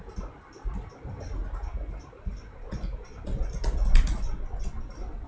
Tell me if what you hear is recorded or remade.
recorded